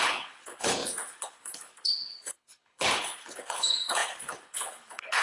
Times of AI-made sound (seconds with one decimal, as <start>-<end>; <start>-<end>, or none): 0.0-5.2